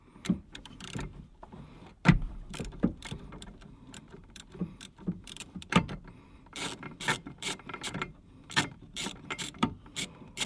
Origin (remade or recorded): remade